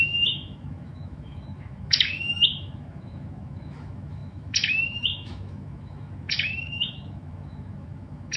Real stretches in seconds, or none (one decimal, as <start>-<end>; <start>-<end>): none